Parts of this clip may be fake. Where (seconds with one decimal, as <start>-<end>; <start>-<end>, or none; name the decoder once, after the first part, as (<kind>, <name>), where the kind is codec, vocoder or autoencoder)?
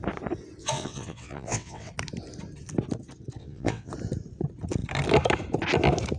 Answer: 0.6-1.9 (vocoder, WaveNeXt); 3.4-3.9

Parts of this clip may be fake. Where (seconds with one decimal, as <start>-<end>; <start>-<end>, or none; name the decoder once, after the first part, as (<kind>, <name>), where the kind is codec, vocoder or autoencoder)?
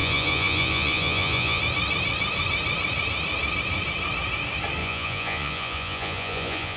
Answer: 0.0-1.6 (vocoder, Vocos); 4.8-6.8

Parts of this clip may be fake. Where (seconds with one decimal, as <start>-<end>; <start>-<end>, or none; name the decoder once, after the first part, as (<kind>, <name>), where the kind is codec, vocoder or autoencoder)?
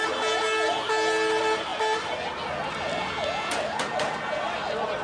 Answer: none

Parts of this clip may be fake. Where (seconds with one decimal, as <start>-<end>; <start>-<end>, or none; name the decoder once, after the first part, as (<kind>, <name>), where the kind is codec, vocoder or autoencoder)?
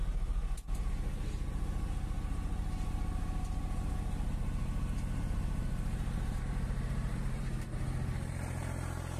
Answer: 0.0-0.4 (vocoder, BigVGAN v2); 5.2-9.2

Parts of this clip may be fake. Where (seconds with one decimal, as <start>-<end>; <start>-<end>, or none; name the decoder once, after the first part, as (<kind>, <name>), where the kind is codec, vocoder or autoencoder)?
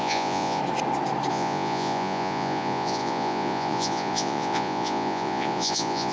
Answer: 0.0-0.6 (vocoder, Vocos); 1.3-6.1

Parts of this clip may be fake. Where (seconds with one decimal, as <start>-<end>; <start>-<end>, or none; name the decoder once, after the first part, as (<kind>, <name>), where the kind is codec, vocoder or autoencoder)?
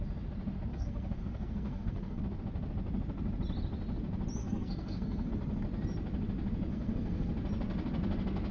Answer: 0.7-2.2 (codec, SNAC); 4.4-5.3; 6.7-7.3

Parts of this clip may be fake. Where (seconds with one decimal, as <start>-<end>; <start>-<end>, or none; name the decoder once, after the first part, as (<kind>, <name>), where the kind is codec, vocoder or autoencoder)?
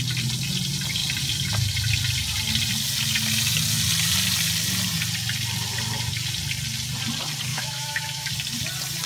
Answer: 7.5-8.3 (autoencoder, DAC-VAE)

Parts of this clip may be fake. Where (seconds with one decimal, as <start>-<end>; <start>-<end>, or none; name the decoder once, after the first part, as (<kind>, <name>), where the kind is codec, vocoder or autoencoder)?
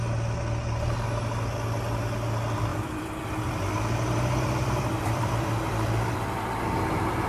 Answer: 2.7-6.7 (vocoder, BigVGAN v2)